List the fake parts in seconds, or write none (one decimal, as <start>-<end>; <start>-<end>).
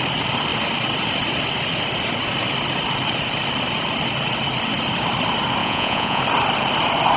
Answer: 5.6-6.2